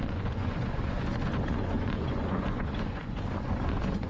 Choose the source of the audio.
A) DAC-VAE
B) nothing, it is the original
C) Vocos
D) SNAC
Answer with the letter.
C